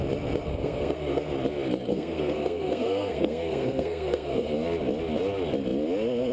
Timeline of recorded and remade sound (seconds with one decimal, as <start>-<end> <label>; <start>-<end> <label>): 0.0-0.5 recorded; 0.5-1.3 remade; 1.3-1.9 recorded; 1.9-4.5 remade; 4.5-6.3 recorded

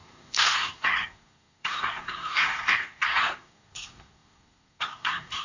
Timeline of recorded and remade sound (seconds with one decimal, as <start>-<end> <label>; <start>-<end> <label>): 0.0-5.4 remade

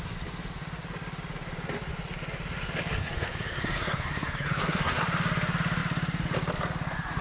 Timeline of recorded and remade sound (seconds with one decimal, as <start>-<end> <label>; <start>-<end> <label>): 0.0-3.0 recorded; 3.0-5.0 remade; 5.0-7.2 recorded

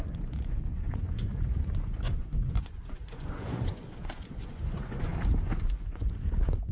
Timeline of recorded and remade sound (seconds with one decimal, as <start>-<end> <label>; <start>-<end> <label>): 0.0-5.1 remade; 5.1-5.6 recorded; 5.6-6.7 remade

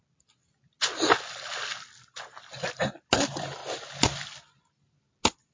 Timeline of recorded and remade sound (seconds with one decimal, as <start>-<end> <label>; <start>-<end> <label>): 0.0-5.5 recorded

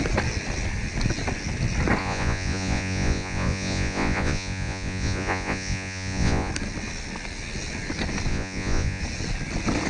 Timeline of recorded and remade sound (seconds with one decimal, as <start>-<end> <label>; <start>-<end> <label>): 0.0-2.0 recorded; 2.0-6.5 remade; 6.5-8.3 recorded; 8.3-9.0 remade; 9.0-9.9 recorded

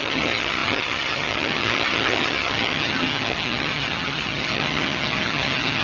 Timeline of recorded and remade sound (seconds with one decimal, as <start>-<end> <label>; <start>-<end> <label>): 0.0-5.8 remade